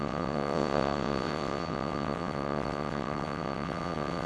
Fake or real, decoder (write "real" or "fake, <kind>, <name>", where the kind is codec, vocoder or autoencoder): fake, vocoder, WaveNeXt